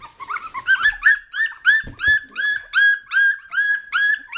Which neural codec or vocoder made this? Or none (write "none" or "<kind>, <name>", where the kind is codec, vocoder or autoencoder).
none